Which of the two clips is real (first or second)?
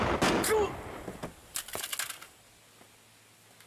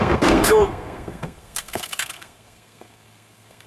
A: first